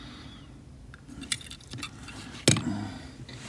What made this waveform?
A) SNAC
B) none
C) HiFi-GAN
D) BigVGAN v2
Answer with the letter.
B